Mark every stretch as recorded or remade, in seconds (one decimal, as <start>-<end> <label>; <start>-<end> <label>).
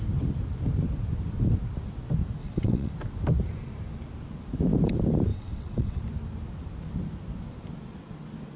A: 0.0-2.4 recorded; 2.4-2.9 remade; 2.9-5.3 recorded; 5.3-6.0 remade; 6.0-8.6 recorded